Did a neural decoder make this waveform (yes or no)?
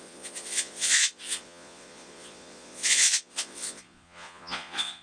yes